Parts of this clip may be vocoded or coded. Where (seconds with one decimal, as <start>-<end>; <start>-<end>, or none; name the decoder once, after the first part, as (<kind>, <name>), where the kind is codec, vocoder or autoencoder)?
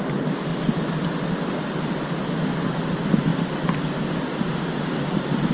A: none